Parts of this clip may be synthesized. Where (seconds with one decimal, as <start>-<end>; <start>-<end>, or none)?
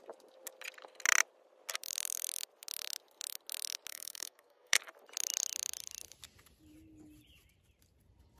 3.9-4.8